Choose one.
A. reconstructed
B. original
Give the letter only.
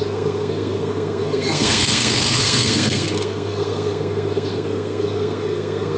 A